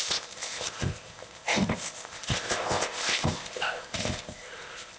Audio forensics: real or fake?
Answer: fake